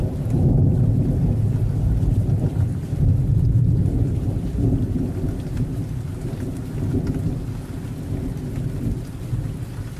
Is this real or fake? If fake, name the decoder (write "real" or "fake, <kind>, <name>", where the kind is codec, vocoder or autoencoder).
real